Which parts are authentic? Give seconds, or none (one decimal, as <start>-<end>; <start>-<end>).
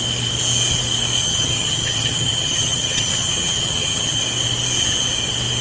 0.0-1.2; 4.2-5.6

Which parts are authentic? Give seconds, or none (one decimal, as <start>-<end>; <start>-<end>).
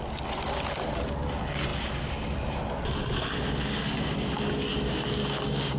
0.0-4.7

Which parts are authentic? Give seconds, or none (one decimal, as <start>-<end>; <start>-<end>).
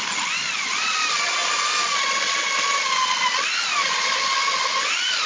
0.0-5.3